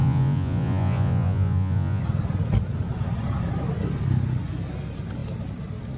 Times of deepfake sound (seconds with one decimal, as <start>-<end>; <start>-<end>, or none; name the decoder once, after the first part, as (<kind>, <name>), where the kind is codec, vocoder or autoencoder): 0.0-2.0 (vocoder, Vocos)